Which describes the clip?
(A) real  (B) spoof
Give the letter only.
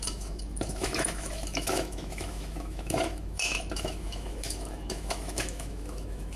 B